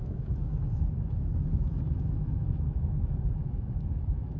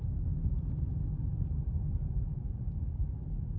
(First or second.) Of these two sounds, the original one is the second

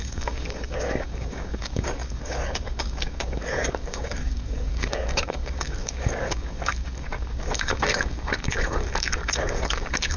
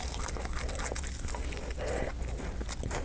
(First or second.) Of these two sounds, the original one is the second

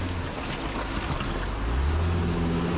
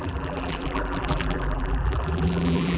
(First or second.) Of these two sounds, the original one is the first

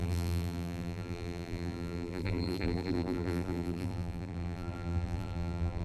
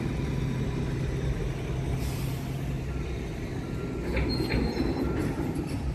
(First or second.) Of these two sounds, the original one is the second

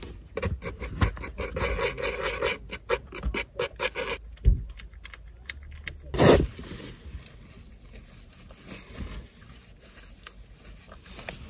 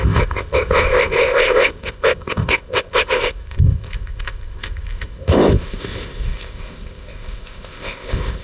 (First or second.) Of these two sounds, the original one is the first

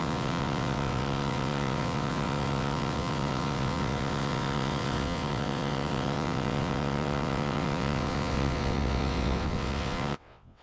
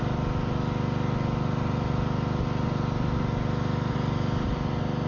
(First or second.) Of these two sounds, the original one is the second